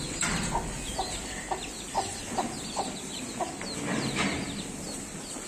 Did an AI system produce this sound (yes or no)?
no